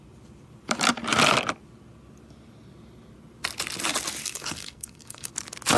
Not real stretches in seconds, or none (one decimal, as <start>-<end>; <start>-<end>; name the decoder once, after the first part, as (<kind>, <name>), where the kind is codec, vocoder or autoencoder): 4.2-5.3 (codec, SNAC)